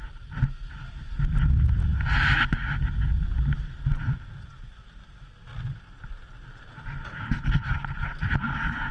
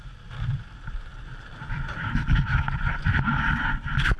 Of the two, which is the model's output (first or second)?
second